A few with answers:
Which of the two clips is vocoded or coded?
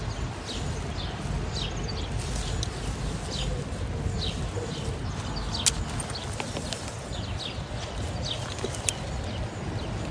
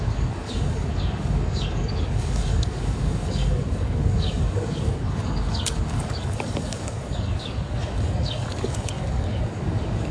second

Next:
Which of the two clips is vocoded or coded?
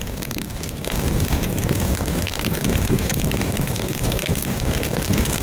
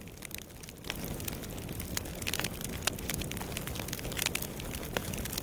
first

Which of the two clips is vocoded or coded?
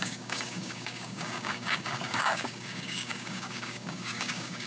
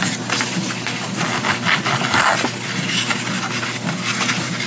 first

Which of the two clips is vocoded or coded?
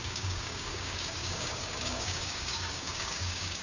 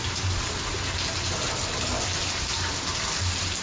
first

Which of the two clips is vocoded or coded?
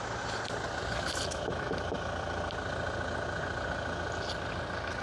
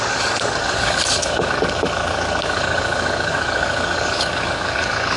second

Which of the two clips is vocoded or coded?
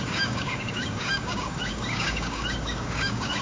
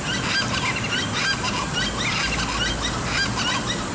first